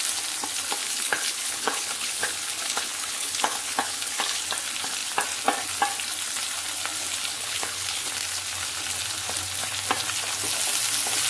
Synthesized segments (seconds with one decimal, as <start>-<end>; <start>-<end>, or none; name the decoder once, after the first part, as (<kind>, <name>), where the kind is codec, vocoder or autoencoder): 0.8-4.4 (codec, HILCodec); 7.3-8.1